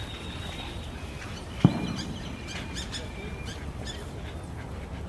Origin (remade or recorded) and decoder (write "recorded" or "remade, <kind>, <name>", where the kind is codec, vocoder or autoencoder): recorded